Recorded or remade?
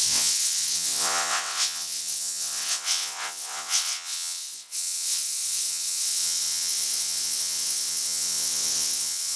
remade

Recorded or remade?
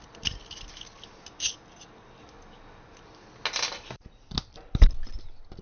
recorded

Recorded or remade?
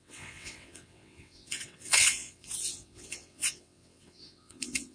remade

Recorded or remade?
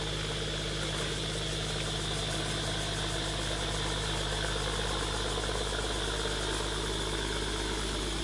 recorded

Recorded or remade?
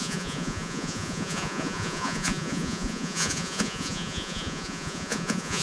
remade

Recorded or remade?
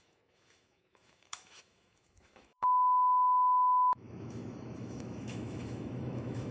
remade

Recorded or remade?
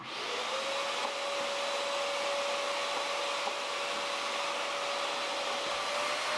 recorded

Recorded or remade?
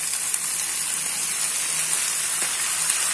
recorded